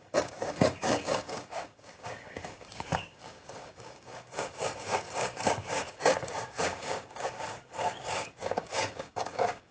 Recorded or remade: remade